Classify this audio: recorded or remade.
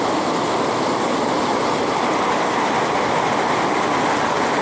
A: recorded